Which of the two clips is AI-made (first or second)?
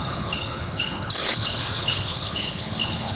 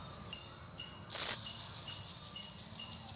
first